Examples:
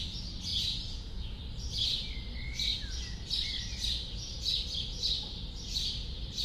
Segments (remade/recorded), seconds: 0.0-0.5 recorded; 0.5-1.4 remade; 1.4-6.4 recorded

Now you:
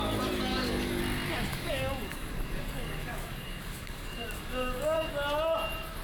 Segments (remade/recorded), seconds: 0.0-0.5 recorded; 0.5-1.0 remade; 1.0-1.5 recorded; 1.5-5.1 remade; 5.1-6.0 recorded

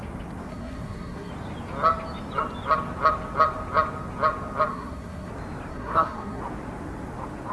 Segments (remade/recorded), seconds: 0.0-0.5 recorded; 0.5-1.3 remade; 1.3-4.7 recorded; 4.7-5.3 remade; 5.3-5.7 recorded; 5.7-6.4 remade; 6.4-7.5 recorded

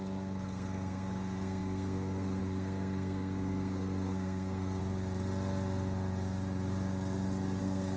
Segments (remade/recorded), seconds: 0.0-4.8 remade; 4.8-7.6 recorded; 7.6-8.0 remade

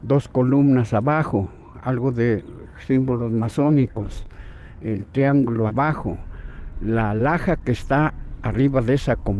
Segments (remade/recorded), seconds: 0.0-2.7 recorded; 2.7-5.7 remade; 5.7-9.4 recorded

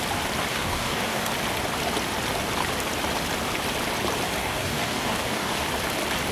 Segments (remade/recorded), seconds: 0.0-0.5 recorded; 0.5-1.3 remade; 1.3-4.4 recorded; 4.4-5.6 remade; 5.6-6.3 recorded

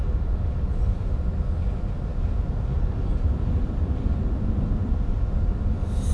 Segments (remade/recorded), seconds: 0.0-6.1 recorded